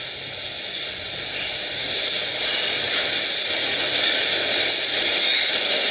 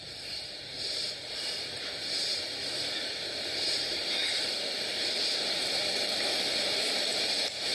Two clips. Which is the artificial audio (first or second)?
second